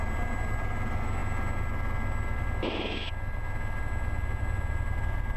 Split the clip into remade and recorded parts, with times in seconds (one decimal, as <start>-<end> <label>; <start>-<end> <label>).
0.0-5.4 recorded